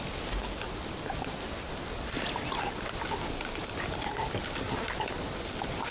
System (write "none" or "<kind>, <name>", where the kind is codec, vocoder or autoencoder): none